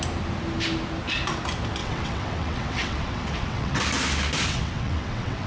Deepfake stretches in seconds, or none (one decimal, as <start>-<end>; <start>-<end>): 1.8-3.8; 4.5-5.5